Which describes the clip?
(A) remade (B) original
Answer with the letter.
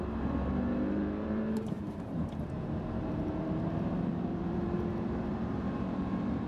A